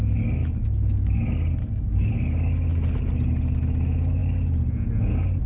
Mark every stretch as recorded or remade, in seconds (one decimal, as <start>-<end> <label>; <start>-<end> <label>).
0.0-0.4 recorded; 0.4-1.2 remade; 1.2-1.6 recorded; 1.6-2.1 remade; 2.1-5.5 recorded